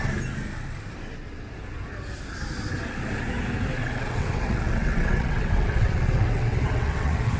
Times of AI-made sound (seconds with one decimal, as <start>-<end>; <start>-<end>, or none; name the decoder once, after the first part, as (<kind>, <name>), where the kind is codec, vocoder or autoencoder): 3.8-7.4 (vocoder, WaveNeXt)